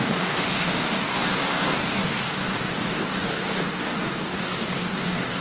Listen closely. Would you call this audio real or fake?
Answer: fake